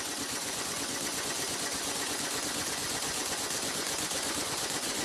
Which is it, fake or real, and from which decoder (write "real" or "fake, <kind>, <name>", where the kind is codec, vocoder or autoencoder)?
fake, vocoder, Vocos